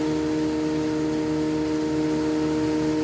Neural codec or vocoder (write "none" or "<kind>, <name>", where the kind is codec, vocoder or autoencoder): none